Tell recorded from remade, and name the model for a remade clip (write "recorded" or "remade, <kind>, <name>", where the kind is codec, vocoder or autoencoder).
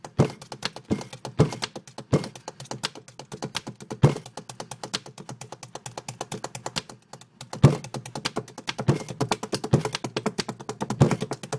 recorded